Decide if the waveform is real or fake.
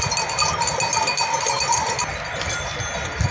real